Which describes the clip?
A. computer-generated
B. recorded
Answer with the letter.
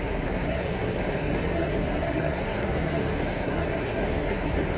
A